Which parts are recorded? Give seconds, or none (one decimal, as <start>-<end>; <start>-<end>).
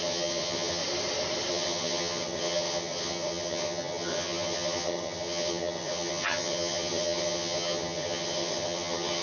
0.8-1.5